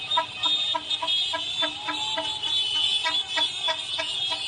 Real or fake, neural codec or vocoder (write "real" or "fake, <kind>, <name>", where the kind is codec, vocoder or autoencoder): real